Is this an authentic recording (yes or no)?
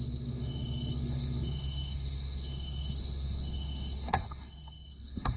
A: no